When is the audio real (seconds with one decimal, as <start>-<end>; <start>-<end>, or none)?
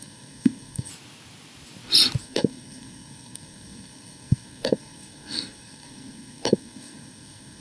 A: 0.9-2.2